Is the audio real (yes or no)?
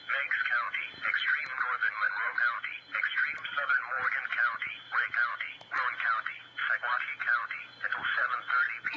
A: yes